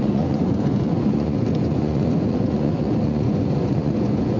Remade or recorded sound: remade